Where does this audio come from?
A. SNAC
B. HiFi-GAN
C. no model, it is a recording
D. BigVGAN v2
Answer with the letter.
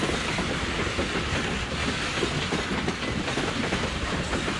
D